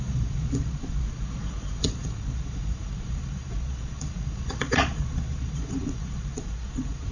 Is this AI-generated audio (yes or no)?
yes